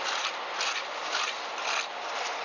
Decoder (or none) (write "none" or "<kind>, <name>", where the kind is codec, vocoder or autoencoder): none